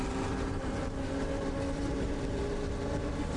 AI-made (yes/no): yes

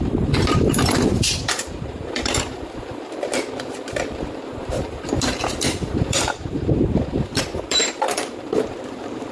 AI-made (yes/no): yes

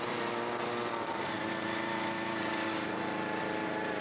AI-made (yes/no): no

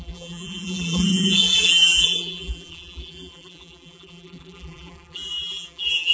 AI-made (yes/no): yes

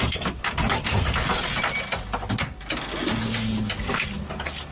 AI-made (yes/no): no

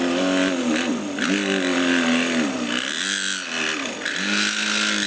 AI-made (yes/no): no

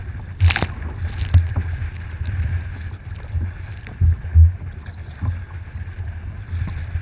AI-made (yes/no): no